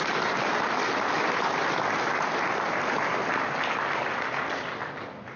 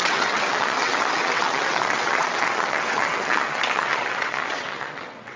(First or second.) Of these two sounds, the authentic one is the first